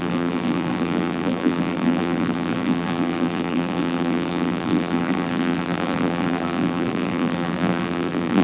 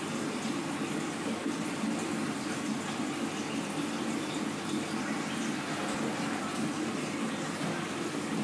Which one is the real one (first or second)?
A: second